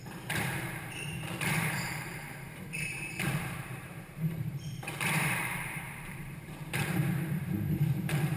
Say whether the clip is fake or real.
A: fake